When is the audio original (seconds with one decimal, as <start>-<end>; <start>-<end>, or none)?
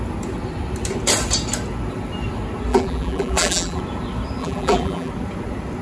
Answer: 0.0-2.7; 3.8-4.4; 5.1-5.8